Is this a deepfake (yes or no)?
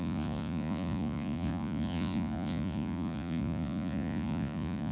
yes